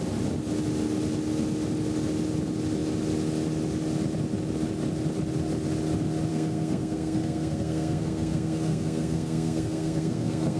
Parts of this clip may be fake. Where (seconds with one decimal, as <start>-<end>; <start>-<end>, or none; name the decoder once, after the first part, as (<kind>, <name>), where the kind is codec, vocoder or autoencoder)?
6.3-10.6 (codec, SNAC)